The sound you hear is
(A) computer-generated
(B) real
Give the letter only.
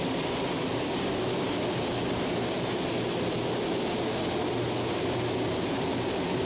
B